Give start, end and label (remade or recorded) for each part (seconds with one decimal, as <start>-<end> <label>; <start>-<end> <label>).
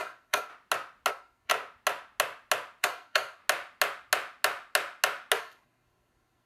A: 0.0-0.5 remade; 0.5-1.1 recorded; 1.1-1.5 remade; 1.5-2.8 recorded; 2.8-3.4 remade; 3.4-5.4 recorded; 5.4-6.5 remade